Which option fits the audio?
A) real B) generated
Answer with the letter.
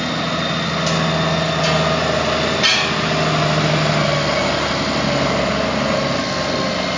A